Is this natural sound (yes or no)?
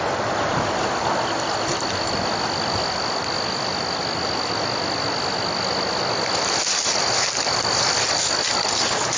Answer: no